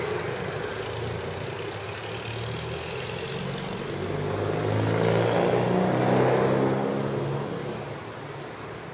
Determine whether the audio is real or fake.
real